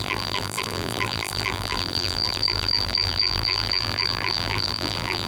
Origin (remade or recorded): remade